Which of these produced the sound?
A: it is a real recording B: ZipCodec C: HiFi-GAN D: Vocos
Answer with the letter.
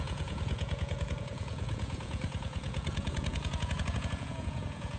D